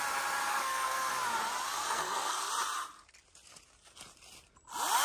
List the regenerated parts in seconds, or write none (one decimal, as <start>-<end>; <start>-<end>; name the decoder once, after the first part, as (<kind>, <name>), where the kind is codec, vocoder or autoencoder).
0.5-1.1 (codec, SNAC); 1.8-2.5